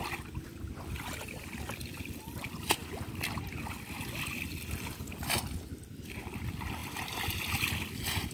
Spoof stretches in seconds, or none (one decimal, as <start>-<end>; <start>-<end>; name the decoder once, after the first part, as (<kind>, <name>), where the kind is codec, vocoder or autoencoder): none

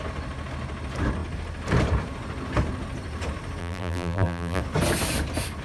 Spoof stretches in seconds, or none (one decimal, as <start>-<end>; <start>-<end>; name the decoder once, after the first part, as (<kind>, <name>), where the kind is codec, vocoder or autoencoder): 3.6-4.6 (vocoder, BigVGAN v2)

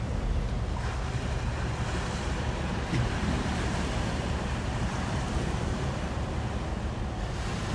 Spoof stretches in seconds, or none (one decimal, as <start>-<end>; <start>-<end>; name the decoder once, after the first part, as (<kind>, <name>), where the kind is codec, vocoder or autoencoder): 2.7-5.7 (vocoder, BigVGAN v2)

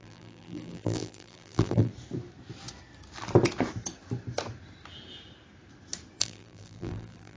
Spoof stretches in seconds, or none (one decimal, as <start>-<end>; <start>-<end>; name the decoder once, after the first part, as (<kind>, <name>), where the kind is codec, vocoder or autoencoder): 0.0-1.9 (vocoder, BigVGAN v2); 6.2-7.4

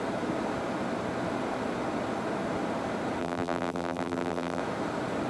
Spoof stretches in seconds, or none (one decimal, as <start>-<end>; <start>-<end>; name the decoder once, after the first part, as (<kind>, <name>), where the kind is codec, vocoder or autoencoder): 3.2-4.6 (vocoder, BigVGAN v2)

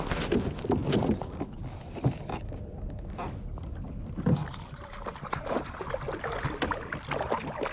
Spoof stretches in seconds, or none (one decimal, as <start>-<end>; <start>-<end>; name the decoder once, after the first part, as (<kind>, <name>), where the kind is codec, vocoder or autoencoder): 4.4-5.8 (vocoder, BigVGAN v2)

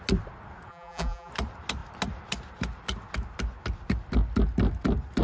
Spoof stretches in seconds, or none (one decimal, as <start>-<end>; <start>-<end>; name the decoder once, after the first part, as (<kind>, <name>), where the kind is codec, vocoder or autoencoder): 0.7-1.3 (vocoder, BigVGAN v2)

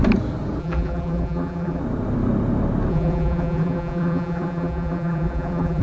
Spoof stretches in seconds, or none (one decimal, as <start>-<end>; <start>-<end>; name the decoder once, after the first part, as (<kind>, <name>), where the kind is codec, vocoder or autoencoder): 0.6-1.8 (vocoder, BigVGAN v2); 2.9-5.8